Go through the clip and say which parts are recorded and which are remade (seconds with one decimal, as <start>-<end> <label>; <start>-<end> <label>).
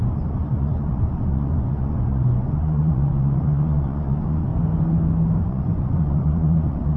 0.0-4.5 remade; 4.5-5.4 recorded; 5.4-7.0 remade